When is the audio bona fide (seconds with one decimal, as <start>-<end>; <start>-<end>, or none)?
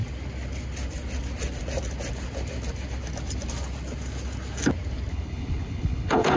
0.0-5.1